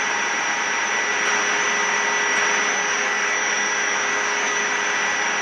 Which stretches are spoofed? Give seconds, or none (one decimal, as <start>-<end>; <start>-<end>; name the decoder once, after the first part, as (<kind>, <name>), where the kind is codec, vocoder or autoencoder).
2.8-4.6 (codec, DAC)